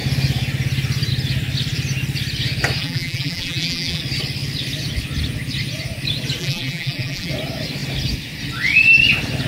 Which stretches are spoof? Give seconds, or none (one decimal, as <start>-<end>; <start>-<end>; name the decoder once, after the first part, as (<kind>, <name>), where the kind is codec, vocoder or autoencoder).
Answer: 2.8-4.0 (vocoder, BigVGAN v2); 6.4-7.3